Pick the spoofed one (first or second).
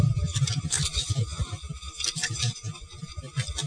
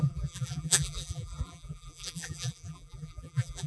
second